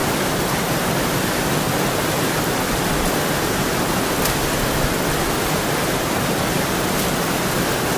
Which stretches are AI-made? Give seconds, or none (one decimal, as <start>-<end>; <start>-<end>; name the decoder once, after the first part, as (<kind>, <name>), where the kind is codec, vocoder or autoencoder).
none